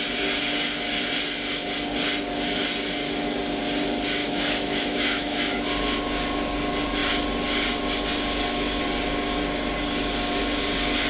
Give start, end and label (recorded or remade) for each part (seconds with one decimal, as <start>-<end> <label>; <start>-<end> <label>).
0.0-4.2 recorded; 4.2-5.4 remade; 5.4-11.1 recorded